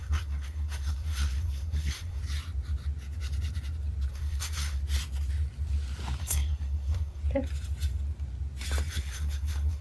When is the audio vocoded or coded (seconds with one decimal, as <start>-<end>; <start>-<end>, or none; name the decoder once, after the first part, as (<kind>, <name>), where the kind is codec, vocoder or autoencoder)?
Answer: 0.0-2.2 (codec, SNAC); 4.1-4.8; 6.2-7.2; 8.9-9.8

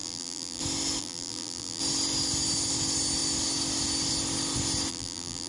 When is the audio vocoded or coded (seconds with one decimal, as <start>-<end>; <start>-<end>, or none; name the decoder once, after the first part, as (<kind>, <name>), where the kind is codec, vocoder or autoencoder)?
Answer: 0.0-0.6 (vocoder, BigVGAN v2); 1.0-1.8; 4.9-5.5

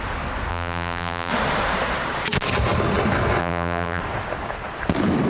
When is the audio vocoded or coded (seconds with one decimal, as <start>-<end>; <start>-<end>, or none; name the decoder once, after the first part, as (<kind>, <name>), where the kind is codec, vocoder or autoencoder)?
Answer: 0.5-1.3 (vocoder, BigVGAN v2); 3.4-4.0